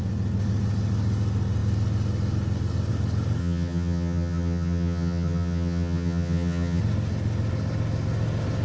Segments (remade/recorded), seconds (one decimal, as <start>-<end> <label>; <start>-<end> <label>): 0.0-3.4 recorded; 3.4-6.8 remade; 6.8-8.6 recorded